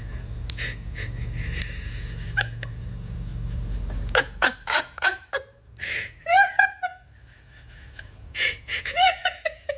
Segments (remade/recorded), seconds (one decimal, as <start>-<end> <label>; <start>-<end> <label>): 0.0-9.8 recorded